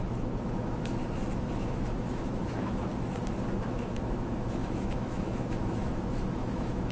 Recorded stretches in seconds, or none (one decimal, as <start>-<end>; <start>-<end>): 1.0-1.6; 2.9-3.6